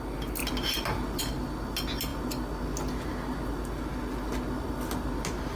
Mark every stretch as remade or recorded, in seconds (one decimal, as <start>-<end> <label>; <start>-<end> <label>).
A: 0.0-5.6 recorded